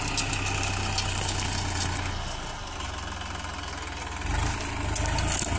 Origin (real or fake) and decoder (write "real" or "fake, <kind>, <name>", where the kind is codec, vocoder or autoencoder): real